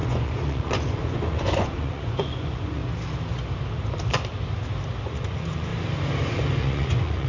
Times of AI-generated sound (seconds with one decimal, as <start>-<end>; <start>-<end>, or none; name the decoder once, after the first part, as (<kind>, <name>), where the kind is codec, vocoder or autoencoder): 0.0-2.8 (vocoder, Vocos); 5.0-5.7; 6.6-7.3

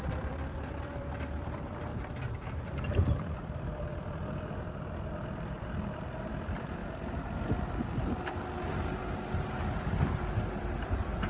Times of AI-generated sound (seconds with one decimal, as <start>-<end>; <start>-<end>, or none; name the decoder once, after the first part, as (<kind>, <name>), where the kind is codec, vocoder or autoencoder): 0.0-1.9 (vocoder, BigVGAN v2); 2.7-6.8; 9.6-11.3